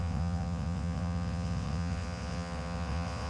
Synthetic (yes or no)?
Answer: yes